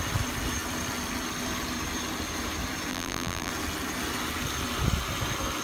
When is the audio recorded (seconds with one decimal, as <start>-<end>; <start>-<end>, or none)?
0.0-2.9; 3.5-5.6